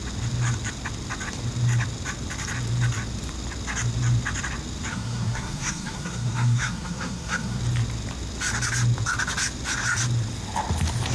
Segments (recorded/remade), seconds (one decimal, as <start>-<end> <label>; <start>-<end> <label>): 0.0-4.9 recorded; 4.9-7.6 remade; 7.6-11.1 recorded